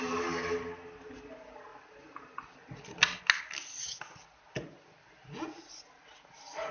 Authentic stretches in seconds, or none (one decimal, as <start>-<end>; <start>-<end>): 0.0-6.7